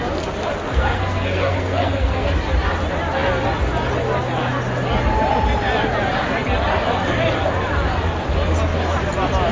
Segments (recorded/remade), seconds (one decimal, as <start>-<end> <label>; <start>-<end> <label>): 0.0-0.7 recorded; 0.7-2.3 remade; 2.3-9.5 recorded